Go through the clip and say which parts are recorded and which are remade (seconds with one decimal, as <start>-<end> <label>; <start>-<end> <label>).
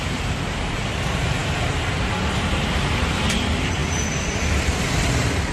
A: 0.0-5.5 remade